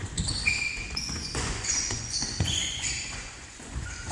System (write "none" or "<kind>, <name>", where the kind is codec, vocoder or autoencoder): vocoder, Vocos